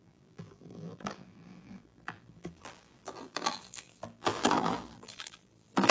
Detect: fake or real fake